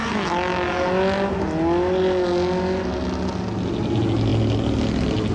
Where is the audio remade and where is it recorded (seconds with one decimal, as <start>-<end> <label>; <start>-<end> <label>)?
0.0-5.3 recorded